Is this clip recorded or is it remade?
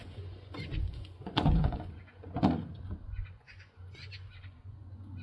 remade